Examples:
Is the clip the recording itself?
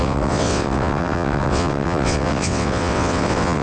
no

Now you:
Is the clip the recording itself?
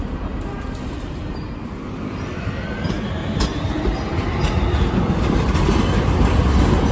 yes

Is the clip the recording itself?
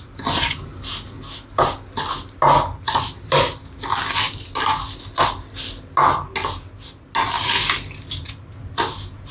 yes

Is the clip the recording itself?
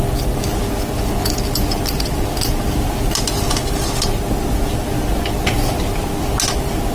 yes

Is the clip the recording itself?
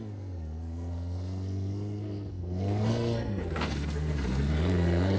no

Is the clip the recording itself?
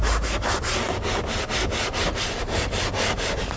yes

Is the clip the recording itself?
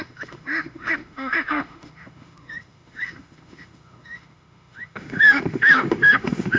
no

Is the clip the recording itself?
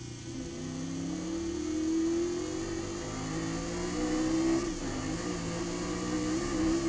yes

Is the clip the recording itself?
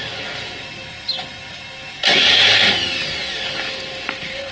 yes